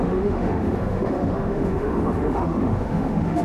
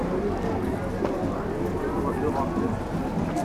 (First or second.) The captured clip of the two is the second